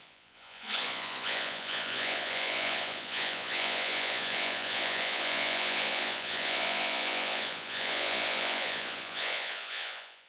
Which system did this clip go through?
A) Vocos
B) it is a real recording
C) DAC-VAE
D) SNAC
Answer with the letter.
A